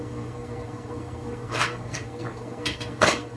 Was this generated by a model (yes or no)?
yes